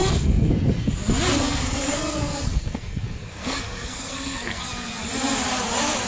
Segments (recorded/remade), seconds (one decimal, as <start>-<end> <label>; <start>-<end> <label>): 0.0-0.9 remade; 0.9-1.3 recorded; 1.3-5.0 remade; 5.0-6.1 recorded